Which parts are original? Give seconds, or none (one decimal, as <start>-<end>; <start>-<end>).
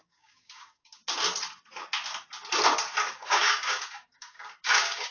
1.0-3.1